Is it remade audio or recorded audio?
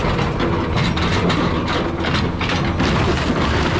recorded